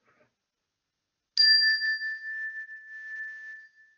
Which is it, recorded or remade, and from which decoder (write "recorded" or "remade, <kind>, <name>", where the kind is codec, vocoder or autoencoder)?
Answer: recorded